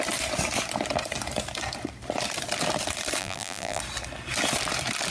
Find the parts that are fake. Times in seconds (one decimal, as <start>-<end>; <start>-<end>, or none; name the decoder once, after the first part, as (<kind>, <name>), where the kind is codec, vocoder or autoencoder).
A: 3.2-3.8 (vocoder, BigVGAN v2)